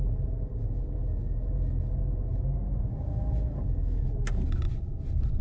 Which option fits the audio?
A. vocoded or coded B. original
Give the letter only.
B